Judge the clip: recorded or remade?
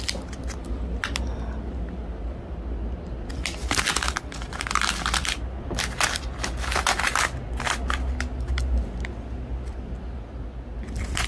recorded